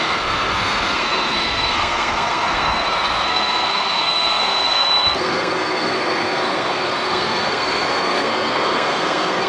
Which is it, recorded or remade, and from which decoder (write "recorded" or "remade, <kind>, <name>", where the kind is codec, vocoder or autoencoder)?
remade, codec, SNAC